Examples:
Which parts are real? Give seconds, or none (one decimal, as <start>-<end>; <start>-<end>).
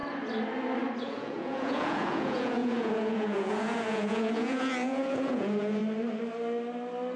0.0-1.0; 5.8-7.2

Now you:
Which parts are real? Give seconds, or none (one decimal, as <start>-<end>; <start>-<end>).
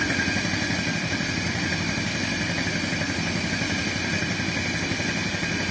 0.0-5.7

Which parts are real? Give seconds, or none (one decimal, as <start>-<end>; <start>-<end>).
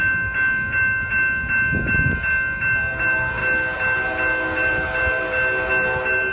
0.0-6.3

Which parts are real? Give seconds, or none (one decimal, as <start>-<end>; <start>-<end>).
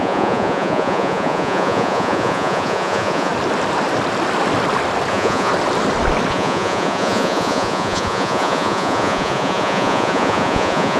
3.3-5.1; 5.5-6.3